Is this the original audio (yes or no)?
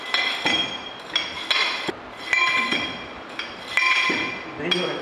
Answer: yes